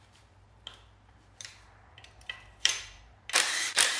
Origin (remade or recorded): remade